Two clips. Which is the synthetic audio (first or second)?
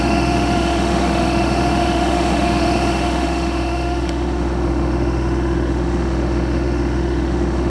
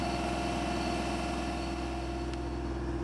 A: first